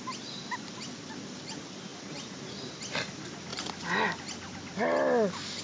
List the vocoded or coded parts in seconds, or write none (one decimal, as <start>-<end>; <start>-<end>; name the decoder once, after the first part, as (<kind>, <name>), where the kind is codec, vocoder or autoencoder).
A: none